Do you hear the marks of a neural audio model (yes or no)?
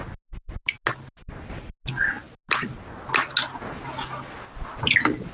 no